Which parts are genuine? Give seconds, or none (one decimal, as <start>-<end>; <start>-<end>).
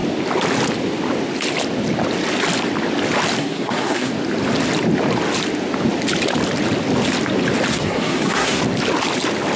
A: 0.0-3.4; 4.1-7.7; 8.6-9.6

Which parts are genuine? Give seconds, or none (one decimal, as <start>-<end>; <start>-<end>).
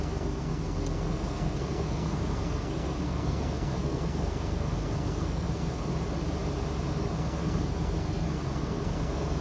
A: 5.9-7.0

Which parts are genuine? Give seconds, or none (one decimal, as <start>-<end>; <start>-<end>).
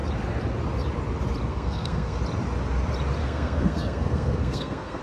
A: 0.0-1.5; 2.2-3.2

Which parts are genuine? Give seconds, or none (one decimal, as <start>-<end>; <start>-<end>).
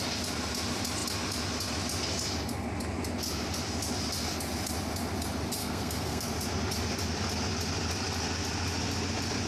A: 0.0-5.6; 6.3-9.5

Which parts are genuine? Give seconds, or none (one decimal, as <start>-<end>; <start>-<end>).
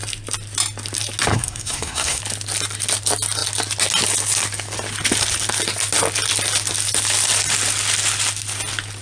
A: 0.0-1.3; 2.2-9.0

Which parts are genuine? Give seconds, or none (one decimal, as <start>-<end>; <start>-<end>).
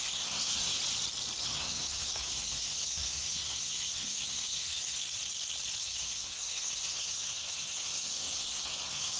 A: 0.8-1.4; 5.0-5.8